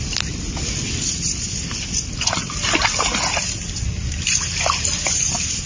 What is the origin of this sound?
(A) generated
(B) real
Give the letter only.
B